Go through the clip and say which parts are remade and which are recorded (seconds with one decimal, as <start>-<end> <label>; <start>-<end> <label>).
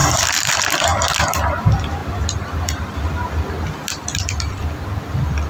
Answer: 0.0-5.5 recorded